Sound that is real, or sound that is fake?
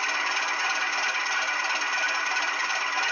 real